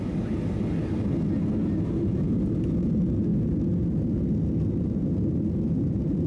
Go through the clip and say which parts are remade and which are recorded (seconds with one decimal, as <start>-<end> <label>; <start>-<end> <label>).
0.0-6.3 recorded